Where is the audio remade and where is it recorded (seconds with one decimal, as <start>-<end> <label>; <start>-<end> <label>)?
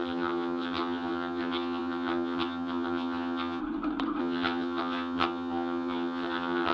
0.0-3.6 remade; 3.6-4.2 recorded; 4.2-6.7 remade